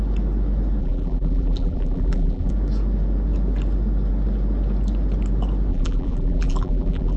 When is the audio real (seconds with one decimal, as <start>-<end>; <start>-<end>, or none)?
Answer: 0.0-0.8; 2.5-5.7